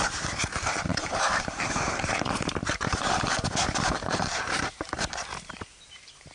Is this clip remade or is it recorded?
remade